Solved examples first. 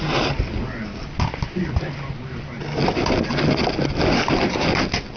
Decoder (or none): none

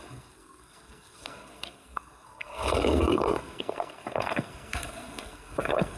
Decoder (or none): codec, SNAC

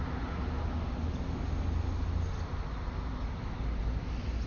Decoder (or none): none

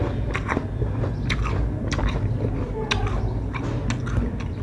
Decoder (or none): none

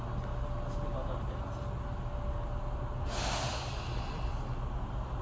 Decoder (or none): none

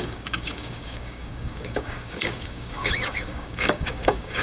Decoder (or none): codec, DAC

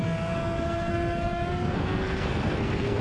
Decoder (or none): codec, SNAC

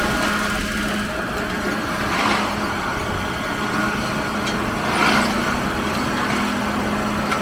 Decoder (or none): none